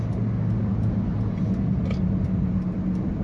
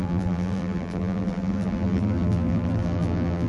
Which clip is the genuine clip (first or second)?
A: first